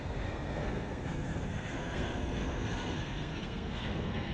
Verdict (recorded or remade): remade